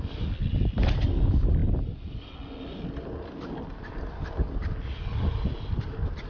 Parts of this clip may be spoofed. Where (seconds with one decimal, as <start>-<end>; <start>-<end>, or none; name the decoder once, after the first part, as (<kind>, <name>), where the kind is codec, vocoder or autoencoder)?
none